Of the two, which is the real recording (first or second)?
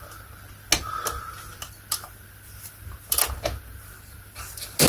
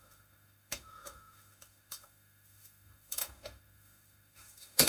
first